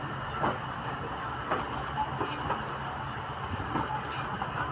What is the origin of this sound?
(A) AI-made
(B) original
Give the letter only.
B